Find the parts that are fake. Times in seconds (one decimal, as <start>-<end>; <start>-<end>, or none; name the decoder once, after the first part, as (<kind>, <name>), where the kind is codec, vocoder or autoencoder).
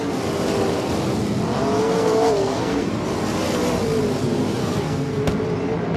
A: 1.8-2.9 (codec, SNAC); 4.6-5.2